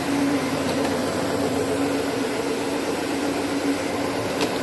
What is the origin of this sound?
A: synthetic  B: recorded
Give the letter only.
B